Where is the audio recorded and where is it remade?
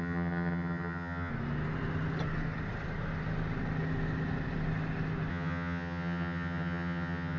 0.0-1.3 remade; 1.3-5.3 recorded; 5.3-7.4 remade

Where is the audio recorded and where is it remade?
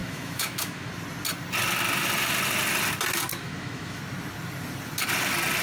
0.0-0.9 remade; 0.9-3.3 recorded; 3.3-4.0 remade; 4.0-5.6 recorded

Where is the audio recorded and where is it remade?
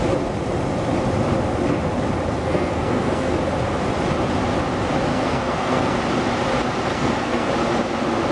0.0-2.4 recorded; 2.4-3.4 remade; 3.4-5.1 recorded; 5.1-6.0 remade; 6.0-6.9 recorded; 6.9-7.5 remade; 7.5-8.3 recorded